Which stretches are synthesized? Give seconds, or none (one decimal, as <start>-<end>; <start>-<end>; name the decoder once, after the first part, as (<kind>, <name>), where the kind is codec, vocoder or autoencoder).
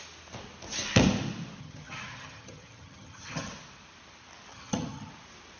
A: 1.6-3.5 (vocoder, HiFi-GAN); 4.5-5.1